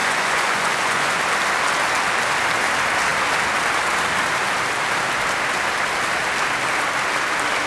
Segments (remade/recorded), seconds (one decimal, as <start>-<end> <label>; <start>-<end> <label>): 0.0-1.2 remade; 1.2-7.7 recorded